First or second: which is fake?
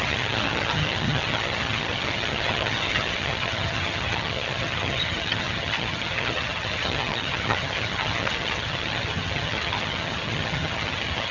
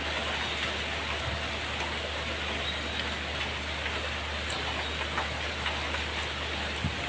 first